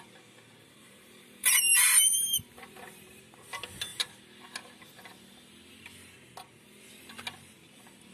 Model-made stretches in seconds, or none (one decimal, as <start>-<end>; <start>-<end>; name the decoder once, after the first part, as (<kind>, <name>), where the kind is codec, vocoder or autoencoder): 0.6-3.2 (vocoder, BigVGAN v2)